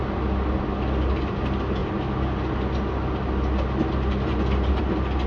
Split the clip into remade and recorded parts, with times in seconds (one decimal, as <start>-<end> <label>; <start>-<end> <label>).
0.0-5.3 recorded

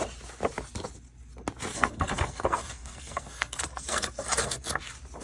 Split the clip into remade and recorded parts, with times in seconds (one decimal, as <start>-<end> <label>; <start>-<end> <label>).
0.0-1.7 recorded; 1.7-4.8 remade; 4.8-5.2 recorded

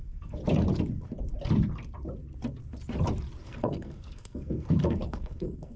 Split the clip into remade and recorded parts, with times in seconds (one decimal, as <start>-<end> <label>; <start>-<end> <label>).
0.0-0.4 remade; 0.4-3.4 recorded; 3.4-5.8 remade

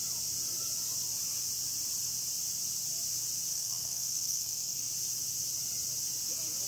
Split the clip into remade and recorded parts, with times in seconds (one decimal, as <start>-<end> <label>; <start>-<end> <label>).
0.0-3.5 recorded; 3.5-4.9 remade; 4.9-6.7 recorded

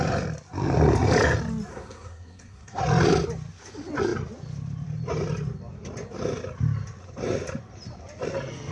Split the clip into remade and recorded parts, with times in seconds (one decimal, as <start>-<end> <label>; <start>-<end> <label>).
0.0-1.7 recorded; 1.7-2.8 remade; 2.8-8.7 recorded

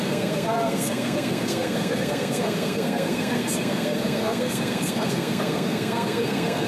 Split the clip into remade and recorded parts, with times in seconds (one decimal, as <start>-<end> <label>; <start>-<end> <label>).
0.0-6.7 remade

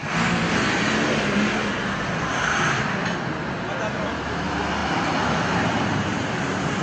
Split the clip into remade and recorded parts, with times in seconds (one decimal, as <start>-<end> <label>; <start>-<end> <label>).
0.0-0.7 remade; 0.7-6.8 recorded